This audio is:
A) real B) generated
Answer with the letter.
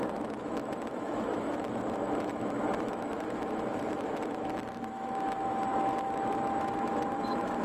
B